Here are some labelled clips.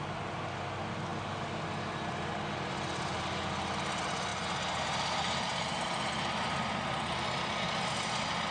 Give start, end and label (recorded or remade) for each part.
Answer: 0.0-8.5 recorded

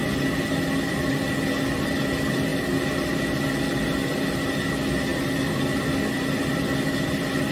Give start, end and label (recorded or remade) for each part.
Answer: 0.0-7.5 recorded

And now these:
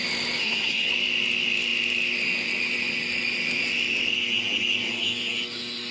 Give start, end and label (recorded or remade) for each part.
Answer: 0.0-0.4 recorded; 0.4-0.9 remade; 0.9-5.9 recorded